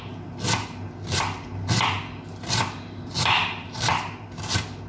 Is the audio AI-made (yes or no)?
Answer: no